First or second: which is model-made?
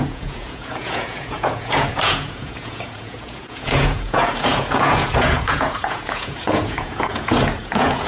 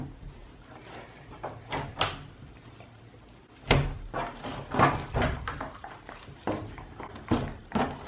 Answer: first